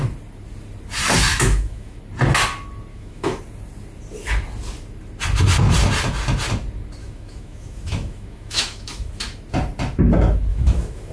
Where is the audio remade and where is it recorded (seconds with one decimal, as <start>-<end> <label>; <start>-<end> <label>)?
0.0-1.3 recorded; 1.3-2.0 remade; 2.0-2.9 recorded; 2.9-3.4 remade; 3.4-7.0 recorded; 7.0-9.1 remade; 9.1-10.5 recorded; 10.5-11.1 remade